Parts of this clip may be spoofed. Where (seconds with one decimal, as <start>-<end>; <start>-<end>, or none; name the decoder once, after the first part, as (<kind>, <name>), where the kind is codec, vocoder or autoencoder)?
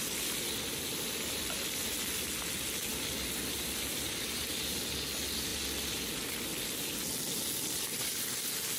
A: none